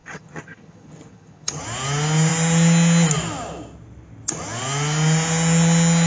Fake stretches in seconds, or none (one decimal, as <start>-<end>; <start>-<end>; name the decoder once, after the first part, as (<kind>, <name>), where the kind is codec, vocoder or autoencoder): 0.0-1.6 (vocoder, HiFi-GAN)